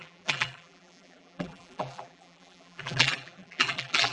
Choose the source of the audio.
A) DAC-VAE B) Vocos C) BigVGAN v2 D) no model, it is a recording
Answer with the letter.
C